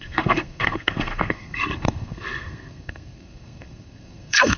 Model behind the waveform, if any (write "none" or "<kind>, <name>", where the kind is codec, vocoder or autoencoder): codec, SNAC